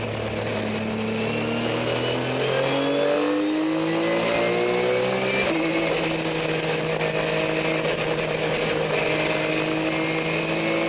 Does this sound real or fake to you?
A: real